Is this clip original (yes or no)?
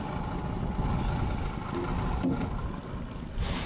yes